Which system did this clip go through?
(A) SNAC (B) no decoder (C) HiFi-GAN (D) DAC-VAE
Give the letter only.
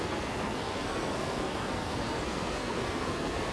A